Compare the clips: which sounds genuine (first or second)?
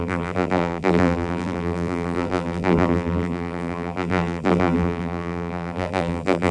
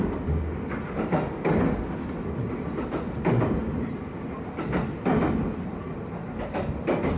second